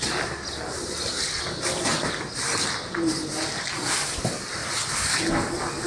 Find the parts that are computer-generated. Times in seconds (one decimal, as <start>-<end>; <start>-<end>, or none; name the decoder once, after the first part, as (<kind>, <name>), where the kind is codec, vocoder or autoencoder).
none